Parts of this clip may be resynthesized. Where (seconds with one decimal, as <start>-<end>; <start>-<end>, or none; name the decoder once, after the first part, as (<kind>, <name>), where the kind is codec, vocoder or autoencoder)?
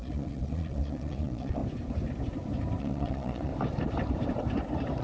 0.0-1.6 (vocoder, Vocos); 2.8-3.5